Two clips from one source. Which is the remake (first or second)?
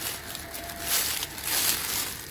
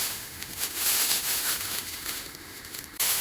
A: second